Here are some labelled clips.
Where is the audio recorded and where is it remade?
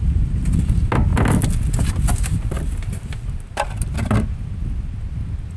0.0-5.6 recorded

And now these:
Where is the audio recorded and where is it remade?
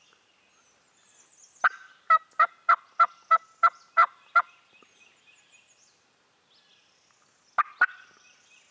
0.0-8.7 recorded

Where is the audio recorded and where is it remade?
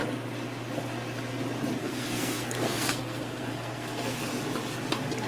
0.0-1.8 recorded; 1.8-4.3 remade; 4.3-5.3 recorded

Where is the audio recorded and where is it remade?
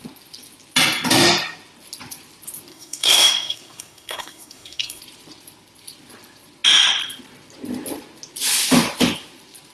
0.0-2.7 recorded; 2.7-5.0 remade; 5.0-9.7 recorded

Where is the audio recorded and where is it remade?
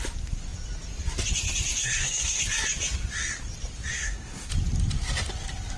0.0-1.8 recorded; 1.8-2.4 remade; 2.4-3.9 recorded; 3.9-4.5 remade; 4.5-5.8 recorded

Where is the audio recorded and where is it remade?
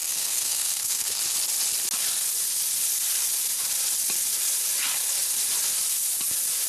0.0-1.2 remade; 1.2-6.7 recorded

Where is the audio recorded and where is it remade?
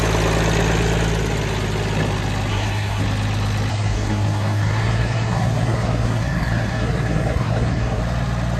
0.0-2.5 recorded; 2.5-3.0 remade; 3.0-3.7 recorded; 3.7-8.0 remade; 8.0-8.6 recorded